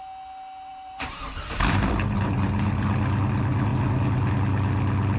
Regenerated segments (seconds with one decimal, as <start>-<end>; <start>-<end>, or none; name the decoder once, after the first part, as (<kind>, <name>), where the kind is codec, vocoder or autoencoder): 0.7-1.9 (vocoder, BigVGAN v2)